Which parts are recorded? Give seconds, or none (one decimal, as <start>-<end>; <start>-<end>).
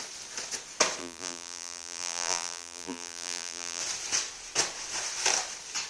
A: 0.0-1.0; 3.8-5.9